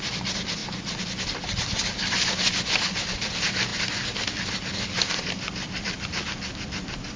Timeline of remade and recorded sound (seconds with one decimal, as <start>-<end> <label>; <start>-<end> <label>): 0.0-7.2 recorded

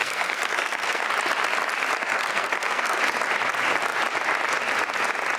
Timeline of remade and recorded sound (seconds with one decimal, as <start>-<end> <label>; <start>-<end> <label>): 0.0-1.1 remade; 1.1-2.0 recorded; 2.0-3.0 remade; 3.0-5.4 recorded